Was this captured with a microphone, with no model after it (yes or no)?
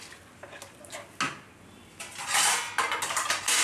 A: yes